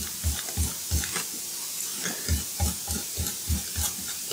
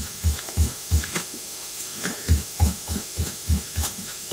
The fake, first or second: second